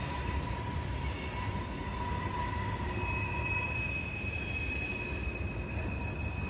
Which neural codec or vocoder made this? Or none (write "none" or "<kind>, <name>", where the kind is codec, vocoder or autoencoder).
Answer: none